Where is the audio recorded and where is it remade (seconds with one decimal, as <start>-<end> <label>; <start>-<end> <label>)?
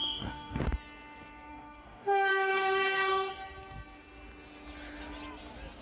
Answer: 0.0-0.6 remade; 0.6-1.5 recorded; 1.5-3.3 remade; 3.3-5.8 recorded